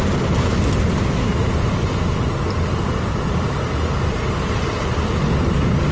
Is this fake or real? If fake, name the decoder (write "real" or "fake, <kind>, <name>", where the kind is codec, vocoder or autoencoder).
real